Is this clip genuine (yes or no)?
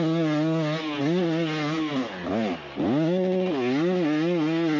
yes